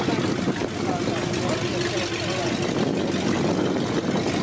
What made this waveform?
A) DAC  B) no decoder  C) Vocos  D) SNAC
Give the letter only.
B